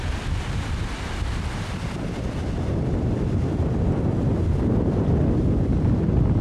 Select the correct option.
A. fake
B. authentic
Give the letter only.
B